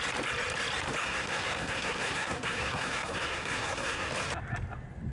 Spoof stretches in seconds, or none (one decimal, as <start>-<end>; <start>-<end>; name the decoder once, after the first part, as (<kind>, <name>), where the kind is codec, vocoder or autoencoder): 1.0-4.1 (codec, SNAC)